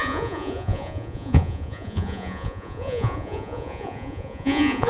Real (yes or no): no